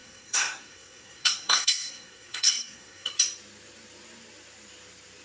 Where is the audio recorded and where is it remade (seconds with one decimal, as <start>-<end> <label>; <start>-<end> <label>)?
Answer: 0.0-3.1 remade; 3.1-5.2 recorded